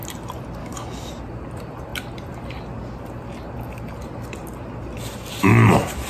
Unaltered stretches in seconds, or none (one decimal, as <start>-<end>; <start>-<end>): 0.0-0.6; 1.1-6.1